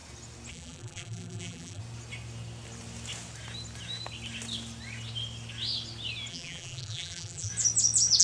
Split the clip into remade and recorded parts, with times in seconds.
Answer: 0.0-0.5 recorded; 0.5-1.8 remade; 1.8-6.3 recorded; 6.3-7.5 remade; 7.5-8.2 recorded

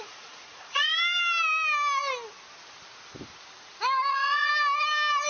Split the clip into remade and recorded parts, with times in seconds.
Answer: 0.0-0.9 remade; 0.9-4.1 recorded; 4.1-4.5 remade; 4.5-5.3 recorded

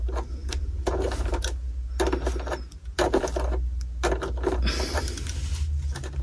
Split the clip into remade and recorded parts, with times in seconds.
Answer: 0.0-6.2 recorded